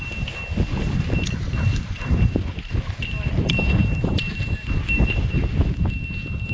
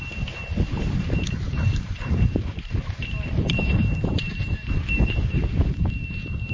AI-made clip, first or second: second